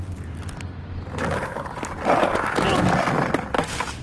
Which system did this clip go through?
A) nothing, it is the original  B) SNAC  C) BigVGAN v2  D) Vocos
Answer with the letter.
A